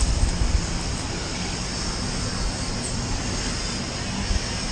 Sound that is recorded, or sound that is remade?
recorded